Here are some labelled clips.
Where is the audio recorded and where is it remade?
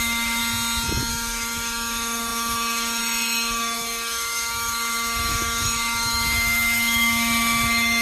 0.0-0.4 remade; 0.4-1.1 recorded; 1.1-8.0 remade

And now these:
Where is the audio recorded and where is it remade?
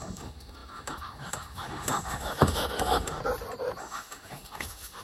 0.0-3.2 remade; 3.2-3.8 recorded; 3.8-5.0 remade